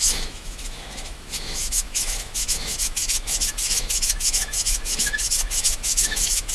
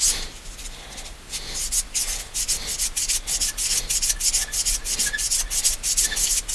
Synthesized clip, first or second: first